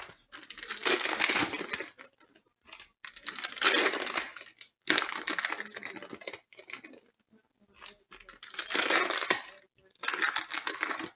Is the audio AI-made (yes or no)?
no